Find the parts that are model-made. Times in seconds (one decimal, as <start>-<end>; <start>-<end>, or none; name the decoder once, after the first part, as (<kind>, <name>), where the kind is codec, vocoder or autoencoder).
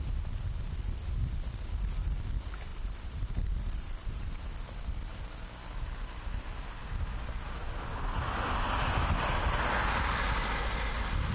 2.7-4.3 (vocoder, BigVGAN v2)